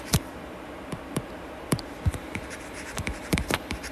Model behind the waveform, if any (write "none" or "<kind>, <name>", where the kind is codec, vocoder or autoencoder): vocoder, BigVGAN v2